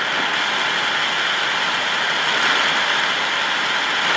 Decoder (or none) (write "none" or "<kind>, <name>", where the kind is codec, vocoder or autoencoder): none